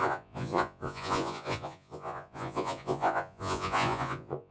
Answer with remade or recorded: remade